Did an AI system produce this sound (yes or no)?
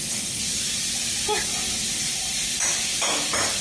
no